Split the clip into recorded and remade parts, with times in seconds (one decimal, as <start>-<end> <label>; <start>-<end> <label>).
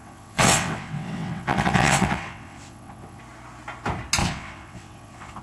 0.0-3.2 remade; 3.2-4.2 recorded; 4.2-5.4 remade